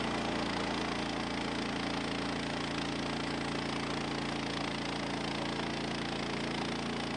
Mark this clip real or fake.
real